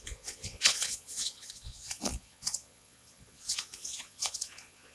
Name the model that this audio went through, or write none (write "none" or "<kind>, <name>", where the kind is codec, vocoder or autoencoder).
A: vocoder, Vocos